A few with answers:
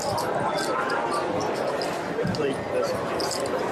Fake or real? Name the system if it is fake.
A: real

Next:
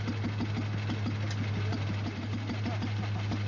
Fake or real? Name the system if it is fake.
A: real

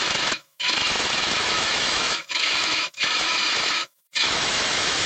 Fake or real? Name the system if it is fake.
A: fake, autoencoder, DAC-VAE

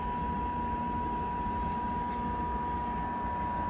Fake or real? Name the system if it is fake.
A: real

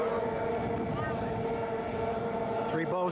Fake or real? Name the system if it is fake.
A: real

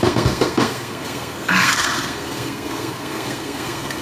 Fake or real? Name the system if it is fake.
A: fake, codec, SNAC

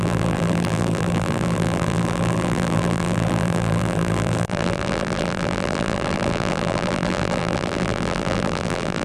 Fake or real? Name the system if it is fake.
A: fake, vocoder, BigVGAN v2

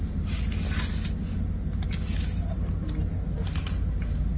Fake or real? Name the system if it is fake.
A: real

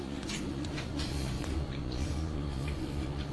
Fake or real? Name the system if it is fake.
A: fake, vocoder, Vocos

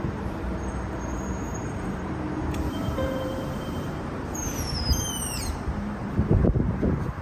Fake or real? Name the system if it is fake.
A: fake, vocoder, BigVGAN v2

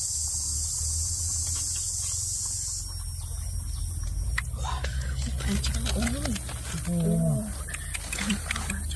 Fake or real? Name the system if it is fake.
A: real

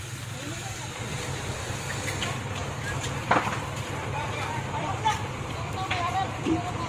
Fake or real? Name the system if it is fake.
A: fake, vocoder, BigVGAN v2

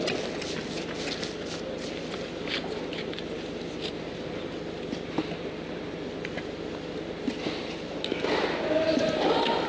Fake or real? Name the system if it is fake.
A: real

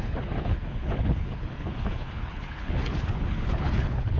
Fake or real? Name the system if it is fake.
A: fake, codec, HILCodec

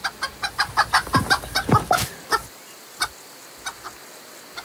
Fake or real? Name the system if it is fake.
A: real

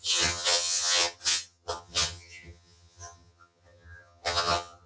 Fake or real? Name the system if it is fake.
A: fake, vocoder, HiFi-GAN